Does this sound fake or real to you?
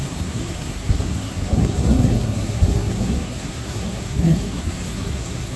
fake